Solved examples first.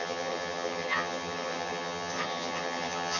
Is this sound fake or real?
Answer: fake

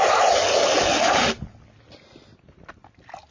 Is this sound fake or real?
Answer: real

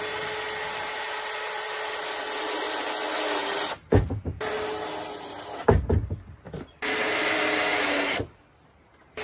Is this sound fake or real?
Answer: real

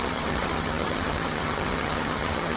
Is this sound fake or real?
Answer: fake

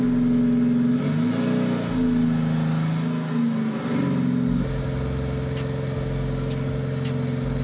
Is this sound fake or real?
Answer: real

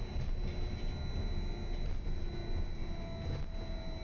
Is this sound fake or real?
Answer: real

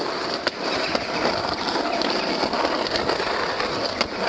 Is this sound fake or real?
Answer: real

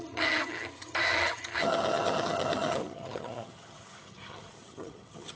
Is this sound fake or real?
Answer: fake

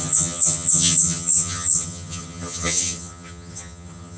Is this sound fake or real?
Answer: fake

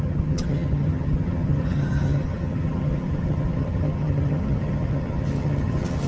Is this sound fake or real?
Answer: fake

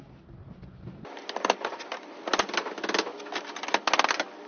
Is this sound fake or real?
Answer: real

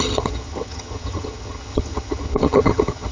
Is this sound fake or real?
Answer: fake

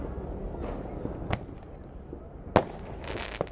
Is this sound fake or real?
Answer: real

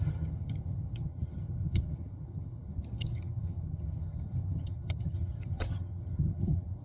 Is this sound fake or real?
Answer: fake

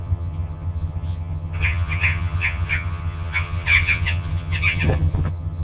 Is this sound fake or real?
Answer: fake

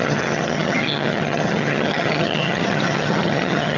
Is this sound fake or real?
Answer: fake